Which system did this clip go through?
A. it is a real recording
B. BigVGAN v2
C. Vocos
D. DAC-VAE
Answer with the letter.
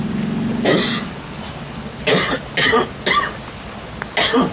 A